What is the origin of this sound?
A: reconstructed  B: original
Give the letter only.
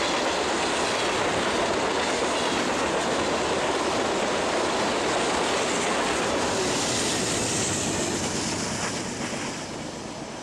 B